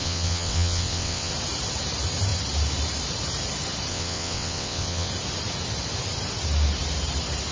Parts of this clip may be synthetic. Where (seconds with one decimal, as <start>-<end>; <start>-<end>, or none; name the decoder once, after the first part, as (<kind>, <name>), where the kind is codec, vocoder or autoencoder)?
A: 0.0-1.3 (vocoder, WaveNeXt); 3.9-5.1